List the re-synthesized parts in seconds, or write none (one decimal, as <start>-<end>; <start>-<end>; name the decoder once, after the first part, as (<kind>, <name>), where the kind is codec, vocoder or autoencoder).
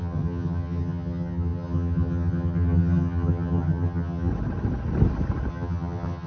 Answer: 0.0-4.3 (vocoder, HiFi-GAN); 5.5-6.3